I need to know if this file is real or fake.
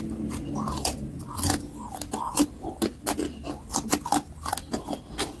real